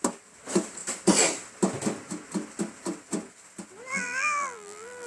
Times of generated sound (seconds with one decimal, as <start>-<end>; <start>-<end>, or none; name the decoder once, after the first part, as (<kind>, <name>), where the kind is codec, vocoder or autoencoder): 3.9-5.1 (vocoder, BigVGAN v2)